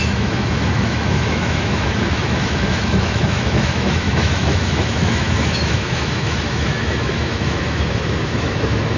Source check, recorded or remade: remade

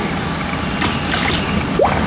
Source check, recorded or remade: recorded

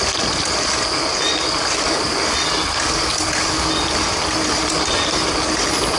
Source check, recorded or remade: recorded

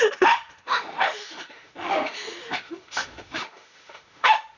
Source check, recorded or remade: remade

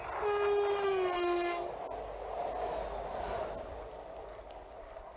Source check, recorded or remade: recorded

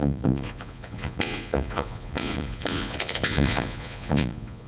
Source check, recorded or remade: remade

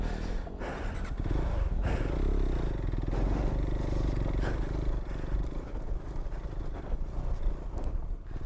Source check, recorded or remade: recorded